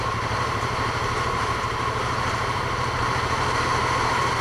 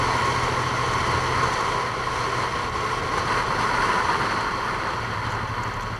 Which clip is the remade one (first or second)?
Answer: first